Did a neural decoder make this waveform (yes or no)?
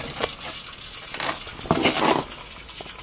no